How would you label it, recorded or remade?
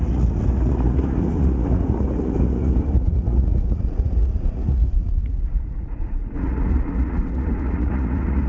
remade